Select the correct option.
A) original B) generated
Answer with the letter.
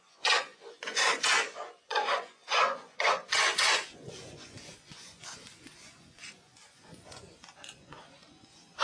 B